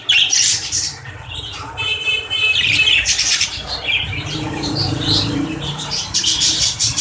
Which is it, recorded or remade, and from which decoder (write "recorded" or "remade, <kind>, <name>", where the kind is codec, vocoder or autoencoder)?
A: remade, vocoder, BigVGAN v2